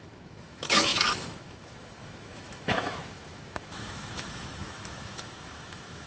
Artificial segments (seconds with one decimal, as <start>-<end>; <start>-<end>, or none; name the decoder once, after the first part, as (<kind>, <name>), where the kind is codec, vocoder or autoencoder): 0.0-6.1 (autoencoder, DAC-VAE)